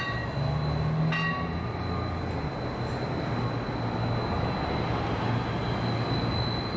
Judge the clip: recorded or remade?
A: recorded